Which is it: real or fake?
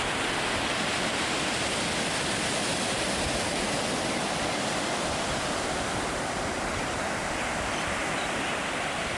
real